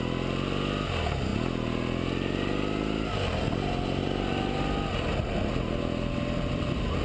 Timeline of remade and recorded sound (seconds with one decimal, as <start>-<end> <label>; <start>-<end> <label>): 0.0-7.0 recorded